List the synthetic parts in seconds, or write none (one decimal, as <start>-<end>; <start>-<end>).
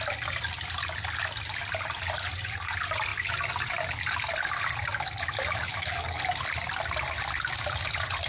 5.7-6.2